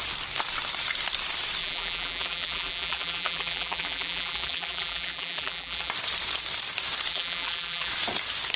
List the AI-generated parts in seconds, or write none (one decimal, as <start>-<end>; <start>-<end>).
1.6-5.9; 7.1-7.9